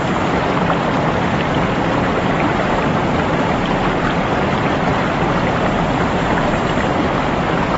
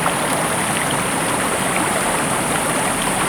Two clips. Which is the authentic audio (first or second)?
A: second